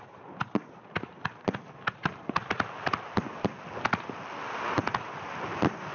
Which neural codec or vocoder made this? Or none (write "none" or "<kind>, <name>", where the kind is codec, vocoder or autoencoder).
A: none